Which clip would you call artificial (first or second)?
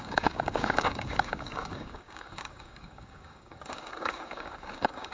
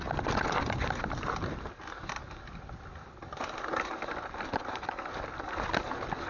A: first